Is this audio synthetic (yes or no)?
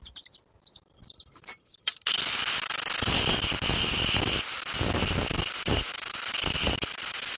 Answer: no